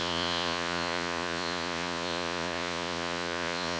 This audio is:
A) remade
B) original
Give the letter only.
A